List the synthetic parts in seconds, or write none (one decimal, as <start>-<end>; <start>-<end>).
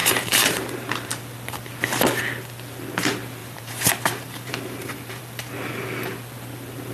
0.0-1.1; 3.4-5.2